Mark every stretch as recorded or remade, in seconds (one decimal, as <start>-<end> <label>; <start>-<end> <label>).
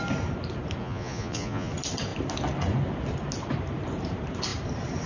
0.0-0.8 recorded; 0.8-1.7 remade; 1.7-5.1 recorded